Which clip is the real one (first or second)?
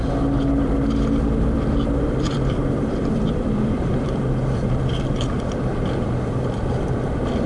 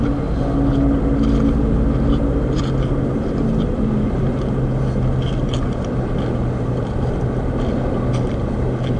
second